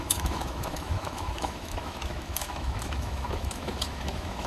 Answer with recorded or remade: remade